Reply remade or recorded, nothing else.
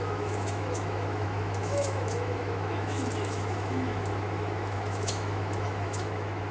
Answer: remade